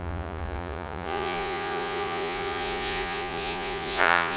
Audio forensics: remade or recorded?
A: remade